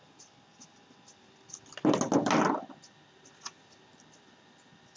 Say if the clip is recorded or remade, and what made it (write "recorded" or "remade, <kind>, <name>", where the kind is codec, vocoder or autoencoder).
recorded